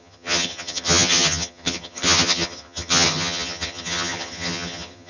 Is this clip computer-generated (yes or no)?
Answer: yes